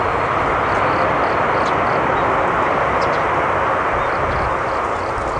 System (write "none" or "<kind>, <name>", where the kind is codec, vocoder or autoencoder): none